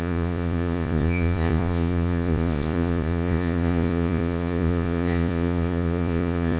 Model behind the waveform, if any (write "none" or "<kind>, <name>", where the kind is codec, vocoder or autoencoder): vocoder, Vocos